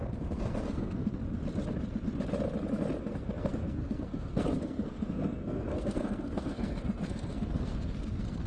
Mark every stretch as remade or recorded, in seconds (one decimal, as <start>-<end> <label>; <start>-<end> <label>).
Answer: 0.0-1.2 remade; 1.2-3.0 recorded; 3.0-8.5 remade